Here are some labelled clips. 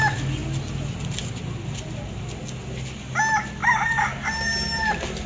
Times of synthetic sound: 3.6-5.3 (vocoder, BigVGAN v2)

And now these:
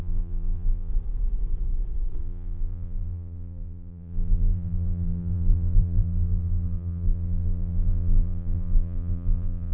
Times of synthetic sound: 0.0-0.9 (vocoder, BigVGAN v2); 2.2-9.7

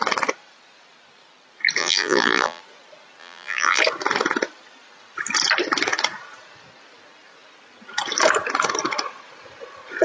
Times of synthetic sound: 1.8-2.6 (vocoder, BigVGAN v2); 3.2-3.8